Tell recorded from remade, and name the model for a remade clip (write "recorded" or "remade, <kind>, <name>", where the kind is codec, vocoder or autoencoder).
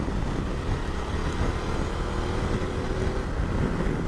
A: recorded